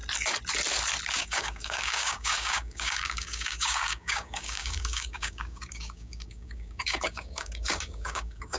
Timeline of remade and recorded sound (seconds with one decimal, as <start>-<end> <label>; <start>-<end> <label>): 0.0-1.1 recorded; 1.1-8.6 remade